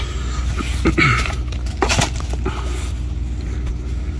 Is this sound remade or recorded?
recorded